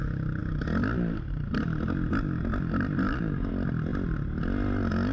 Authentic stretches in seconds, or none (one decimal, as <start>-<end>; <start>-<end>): 0.0-3.0; 3.5-5.1